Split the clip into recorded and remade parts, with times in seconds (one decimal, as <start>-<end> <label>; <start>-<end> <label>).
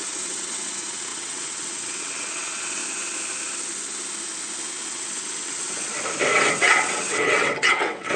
0.0-2.8 remade; 2.8-4.9 recorded; 4.9-5.9 remade; 5.9-6.5 recorded; 6.5-8.2 remade